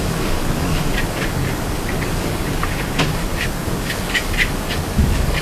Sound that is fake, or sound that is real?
fake